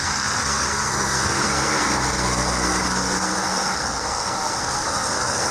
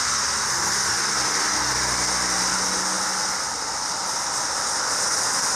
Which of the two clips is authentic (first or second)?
second